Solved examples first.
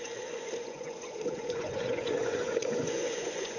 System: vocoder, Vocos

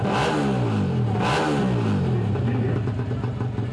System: none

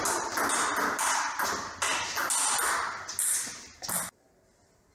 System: none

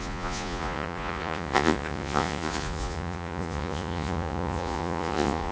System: vocoder, Vocos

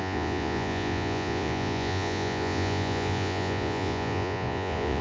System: vocoder, Vocos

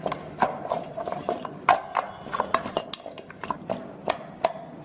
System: none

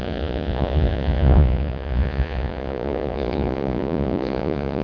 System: vocoder, Vocos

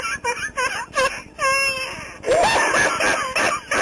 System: none